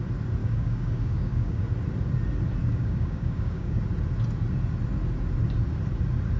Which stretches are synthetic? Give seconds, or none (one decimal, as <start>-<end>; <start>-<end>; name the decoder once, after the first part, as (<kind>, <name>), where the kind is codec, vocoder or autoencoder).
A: 0.4-1.6 (codec, DAC); 2.6-3.8